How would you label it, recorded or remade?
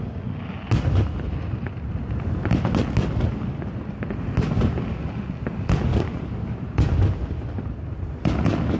recorded